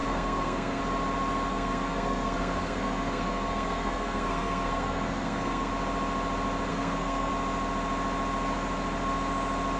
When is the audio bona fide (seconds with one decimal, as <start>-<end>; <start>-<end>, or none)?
0.8-1.5; 5.7-6.7; 7.3-9.8